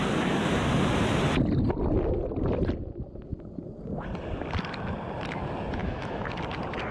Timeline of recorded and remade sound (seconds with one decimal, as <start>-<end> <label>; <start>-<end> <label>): 0.0-5.8 recorded; 5.8-6.3 remade; 6.3-6.9 recorded